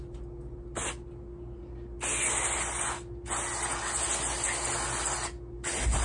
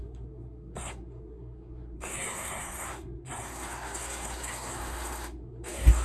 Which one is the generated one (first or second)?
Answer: second